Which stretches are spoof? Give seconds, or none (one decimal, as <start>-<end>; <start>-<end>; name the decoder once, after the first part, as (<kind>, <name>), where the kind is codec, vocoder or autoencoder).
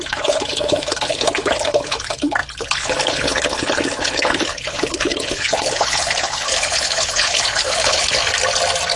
0.0-8.2 (codec, HILCodec)